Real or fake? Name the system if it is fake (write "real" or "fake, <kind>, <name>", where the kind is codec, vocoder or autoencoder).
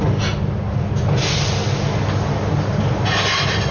real